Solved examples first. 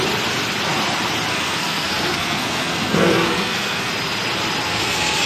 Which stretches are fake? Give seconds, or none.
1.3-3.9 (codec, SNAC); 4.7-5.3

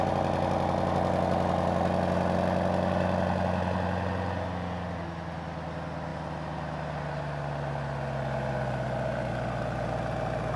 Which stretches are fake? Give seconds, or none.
none